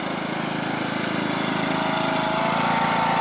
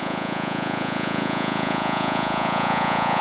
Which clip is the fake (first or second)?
second